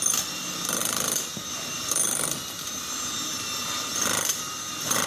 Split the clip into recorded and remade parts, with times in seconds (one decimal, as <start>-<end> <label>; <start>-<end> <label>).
0.0-5.1 recorded

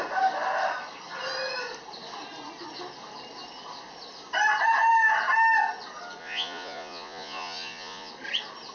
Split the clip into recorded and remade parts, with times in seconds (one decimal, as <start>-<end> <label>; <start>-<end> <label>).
0.0-6.2 recorded; 6.2-8.1 remade; 8.1-8.7 recorded

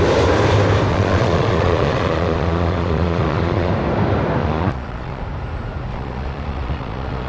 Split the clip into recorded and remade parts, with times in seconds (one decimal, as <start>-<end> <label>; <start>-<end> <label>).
0.0-0.9 recorded; 0.9-3.7 remade; 3.7-4.4 recorded; 4.4-5.2 remade; 5.2-5.9 recorded; 5.9-7.3 remade

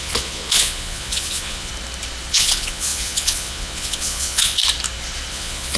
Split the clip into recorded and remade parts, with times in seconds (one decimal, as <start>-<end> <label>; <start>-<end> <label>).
0.0-1.7 remade; 1.7-2.3 recorded; 2.3-4.6 remade; 4.6-5.3 recorded; 5.3-5.8 remade